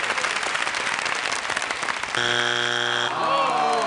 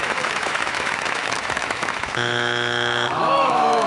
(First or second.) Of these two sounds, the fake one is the second